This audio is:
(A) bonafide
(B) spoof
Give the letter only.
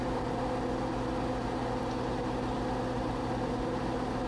A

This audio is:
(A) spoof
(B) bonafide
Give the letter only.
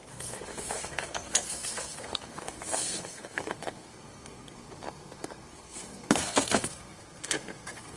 A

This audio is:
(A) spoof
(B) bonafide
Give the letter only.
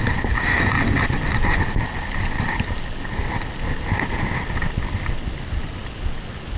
B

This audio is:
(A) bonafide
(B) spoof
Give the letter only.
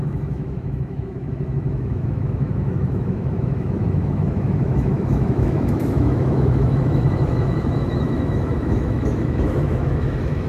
B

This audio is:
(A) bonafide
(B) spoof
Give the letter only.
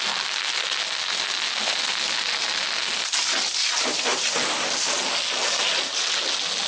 A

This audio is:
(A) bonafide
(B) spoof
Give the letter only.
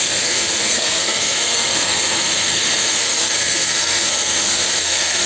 B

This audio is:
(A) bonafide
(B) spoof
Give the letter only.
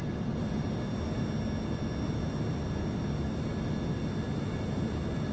A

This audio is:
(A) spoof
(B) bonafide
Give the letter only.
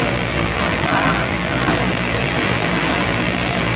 A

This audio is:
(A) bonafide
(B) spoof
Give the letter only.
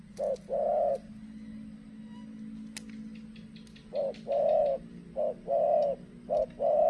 A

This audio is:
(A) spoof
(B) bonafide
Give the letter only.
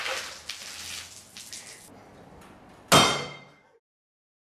B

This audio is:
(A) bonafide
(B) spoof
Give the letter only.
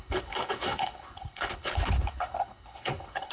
B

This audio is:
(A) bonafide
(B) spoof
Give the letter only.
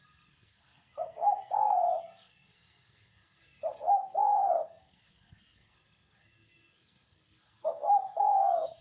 B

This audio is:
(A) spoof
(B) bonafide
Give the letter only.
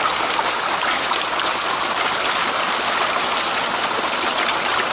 B